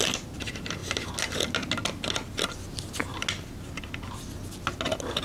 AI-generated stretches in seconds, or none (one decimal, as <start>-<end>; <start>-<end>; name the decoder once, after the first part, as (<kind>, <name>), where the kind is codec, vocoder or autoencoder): none